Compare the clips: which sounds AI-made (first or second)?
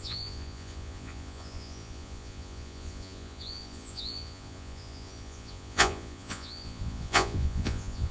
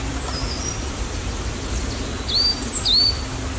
first